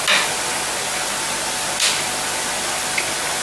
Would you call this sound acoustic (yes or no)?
yes